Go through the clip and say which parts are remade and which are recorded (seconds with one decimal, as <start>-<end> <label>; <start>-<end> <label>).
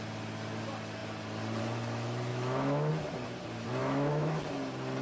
0.0-2.3 recorded; 2.3-2.9 remade; 2.9-3.8 recorded; 3.8-4.4 remade; 4.4-5.0 recorded